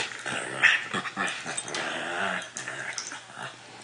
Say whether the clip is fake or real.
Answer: real